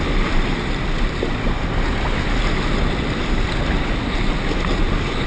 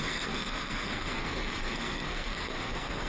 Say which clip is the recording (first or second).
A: first